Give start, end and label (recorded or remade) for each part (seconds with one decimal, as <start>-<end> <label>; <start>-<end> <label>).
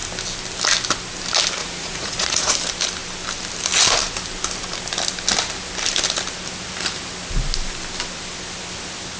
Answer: 0.0-1.6 recorded; 1.6-2.5 remade; 2.5-9.2 recorded